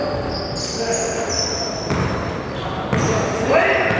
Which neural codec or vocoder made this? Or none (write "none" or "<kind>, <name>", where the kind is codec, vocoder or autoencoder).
none